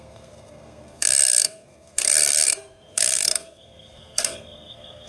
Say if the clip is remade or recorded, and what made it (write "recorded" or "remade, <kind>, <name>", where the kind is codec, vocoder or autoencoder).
remade, codec, SNAC